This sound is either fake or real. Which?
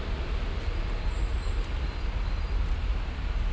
real